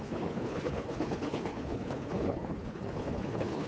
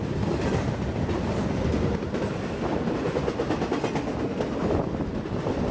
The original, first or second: second